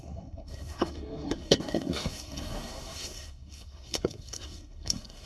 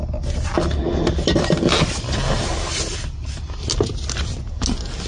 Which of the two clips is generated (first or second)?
first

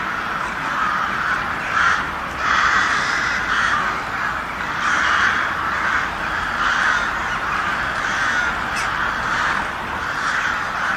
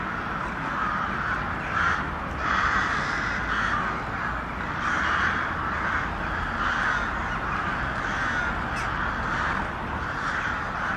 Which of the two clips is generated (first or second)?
first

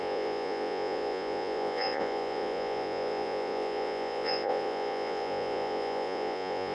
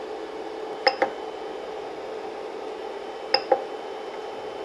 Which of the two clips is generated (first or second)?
first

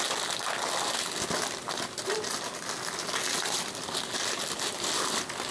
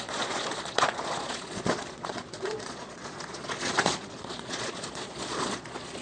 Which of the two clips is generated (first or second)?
second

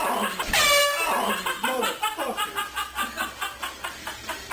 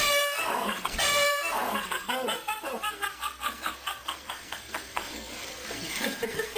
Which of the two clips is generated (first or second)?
second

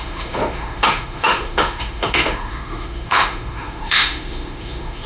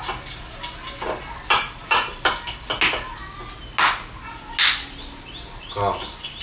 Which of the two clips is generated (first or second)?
first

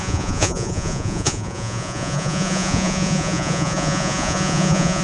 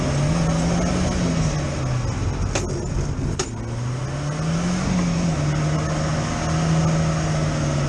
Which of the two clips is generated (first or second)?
first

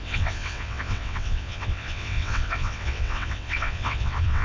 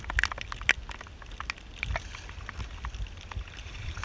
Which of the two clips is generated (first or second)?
first